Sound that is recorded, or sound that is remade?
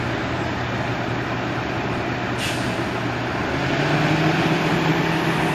recorded